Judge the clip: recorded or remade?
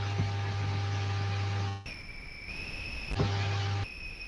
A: recorded